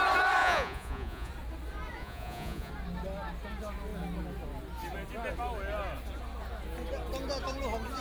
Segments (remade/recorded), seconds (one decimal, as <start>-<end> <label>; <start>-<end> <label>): 0.0-0.4 recorded; 0.4-1.3 remade; 1.3-2.0 recorded; 2.0-2.7 remade; 2.7-8.0 recorded